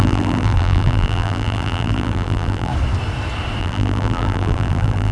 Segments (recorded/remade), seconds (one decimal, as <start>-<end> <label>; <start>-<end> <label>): 0.0-2.7 remade; 2.7-3.6 recorded; 3.6-5.1 remade